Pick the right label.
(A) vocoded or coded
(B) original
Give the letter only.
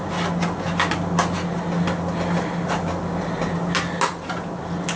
B